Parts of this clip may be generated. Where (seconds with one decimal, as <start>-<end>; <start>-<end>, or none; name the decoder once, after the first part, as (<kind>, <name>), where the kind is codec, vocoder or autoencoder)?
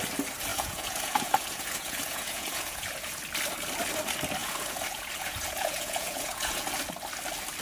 0.5-3.2 (vocoder, Vocos); 4.4-6.7